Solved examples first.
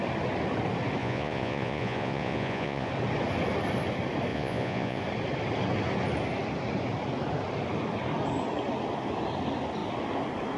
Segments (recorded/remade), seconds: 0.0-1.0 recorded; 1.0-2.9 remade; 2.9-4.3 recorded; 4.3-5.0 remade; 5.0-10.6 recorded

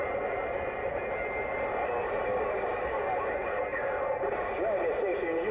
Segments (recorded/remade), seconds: 0.0-5.5 recorded